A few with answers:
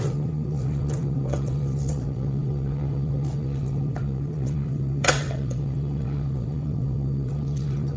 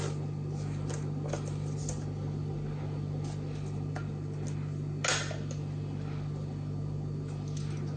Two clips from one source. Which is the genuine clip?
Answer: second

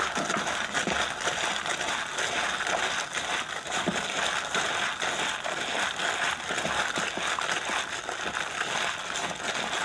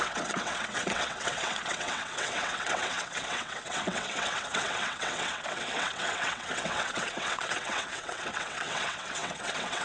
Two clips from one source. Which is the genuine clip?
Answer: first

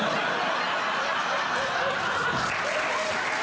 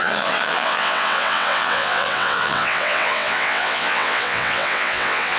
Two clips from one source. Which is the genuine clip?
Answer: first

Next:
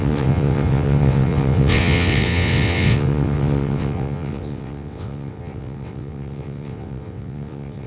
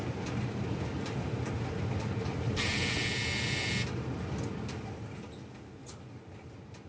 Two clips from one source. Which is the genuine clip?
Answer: second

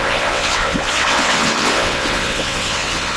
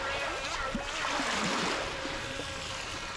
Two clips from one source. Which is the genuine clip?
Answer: second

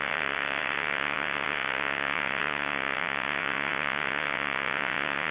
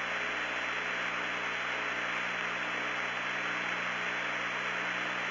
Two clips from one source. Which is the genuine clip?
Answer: second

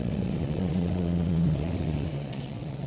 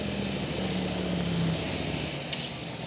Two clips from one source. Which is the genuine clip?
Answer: second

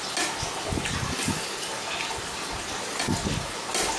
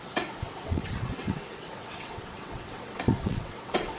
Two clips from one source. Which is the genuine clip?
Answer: first